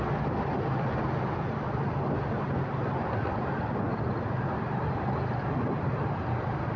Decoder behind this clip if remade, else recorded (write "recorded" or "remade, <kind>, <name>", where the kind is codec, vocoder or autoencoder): recorded